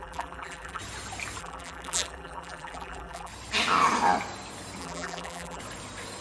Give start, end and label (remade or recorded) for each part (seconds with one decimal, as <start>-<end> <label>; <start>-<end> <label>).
0.0-0.8 remade; 0.8-1.4 recorded; 1.4-3.3 remade; 3.3-4.8 recorded; 4.8-5.6 remade; 5.6-6.2 recorded